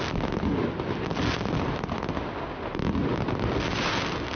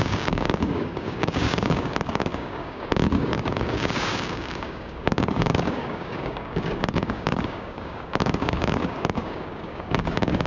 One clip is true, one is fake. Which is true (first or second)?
first